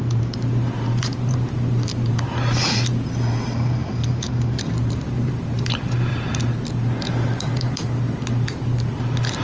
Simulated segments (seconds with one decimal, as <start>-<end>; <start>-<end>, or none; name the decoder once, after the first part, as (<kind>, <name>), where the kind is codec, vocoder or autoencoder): 0.0-6.1 (vocoder, BigVGAN v2); 7.1-9.4

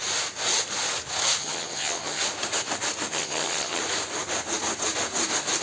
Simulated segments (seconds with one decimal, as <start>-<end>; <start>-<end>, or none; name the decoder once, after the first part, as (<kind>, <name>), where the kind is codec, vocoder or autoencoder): 1.4-2.2 (vocoder, HiFi-GAN); 3.1-3.8

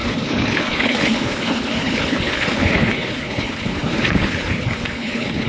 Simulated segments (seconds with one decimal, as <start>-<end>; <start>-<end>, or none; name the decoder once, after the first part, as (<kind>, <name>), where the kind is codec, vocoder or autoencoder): 0.0-5.5 (codec, HILCodec)

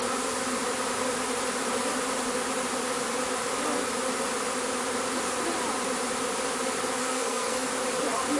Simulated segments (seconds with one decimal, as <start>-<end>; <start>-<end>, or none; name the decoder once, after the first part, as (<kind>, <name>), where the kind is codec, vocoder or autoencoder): 7.0-7.7 (codec, SNAC)

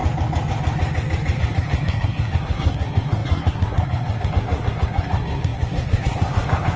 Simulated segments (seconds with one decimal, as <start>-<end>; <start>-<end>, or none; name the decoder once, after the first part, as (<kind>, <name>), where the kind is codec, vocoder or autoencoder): 1.4-6.8 (codec, SNAC)

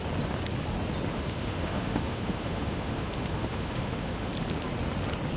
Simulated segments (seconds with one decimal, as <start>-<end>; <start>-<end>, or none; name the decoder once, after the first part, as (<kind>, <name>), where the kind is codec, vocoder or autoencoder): 1.1-4.3 (autoencoder, DAC-VAE)

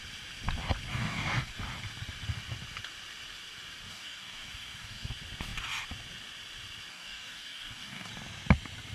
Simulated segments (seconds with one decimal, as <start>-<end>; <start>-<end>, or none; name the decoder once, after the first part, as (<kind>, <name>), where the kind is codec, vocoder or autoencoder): 0.9-1.5 (codec, DAC); 3.9-5.1; 6.9-8.1

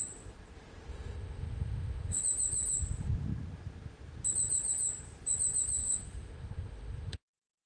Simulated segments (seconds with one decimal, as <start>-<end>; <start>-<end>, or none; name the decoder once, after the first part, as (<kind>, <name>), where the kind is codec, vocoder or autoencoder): 0.9-2.2 (autoencoder, DAC-VAE); 5.8-7.7